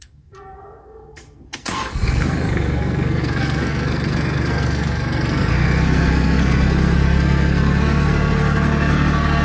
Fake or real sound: fake